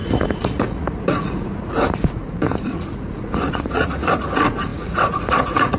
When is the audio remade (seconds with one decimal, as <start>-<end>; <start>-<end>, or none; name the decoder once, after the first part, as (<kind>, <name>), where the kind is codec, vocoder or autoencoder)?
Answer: 0.0-5.8 (vocoder, Vocos)